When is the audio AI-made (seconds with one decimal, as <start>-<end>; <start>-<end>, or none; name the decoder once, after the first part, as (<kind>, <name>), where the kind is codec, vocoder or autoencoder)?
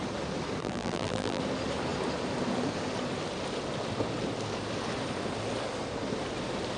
0.6-1.4 (vocoder, BigVGAN v2)